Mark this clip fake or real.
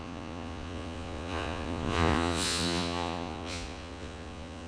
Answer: fake